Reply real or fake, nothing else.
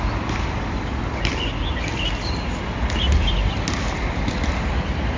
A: real